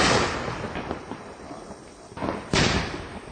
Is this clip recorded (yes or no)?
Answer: yes